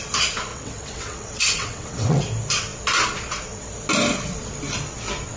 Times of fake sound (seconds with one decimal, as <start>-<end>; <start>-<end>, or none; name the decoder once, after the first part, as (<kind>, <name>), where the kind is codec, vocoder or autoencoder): 0.5-2.2 (vocoder, WaveNeXt)